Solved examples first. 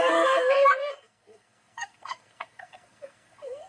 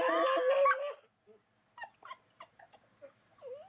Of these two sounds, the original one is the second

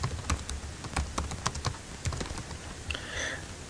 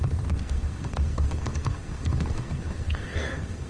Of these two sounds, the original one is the first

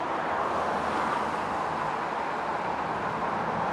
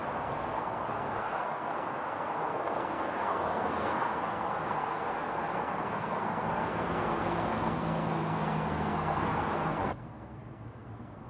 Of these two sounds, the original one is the first